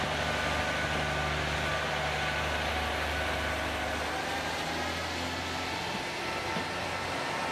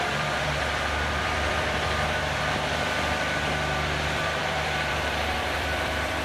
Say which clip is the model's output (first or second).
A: second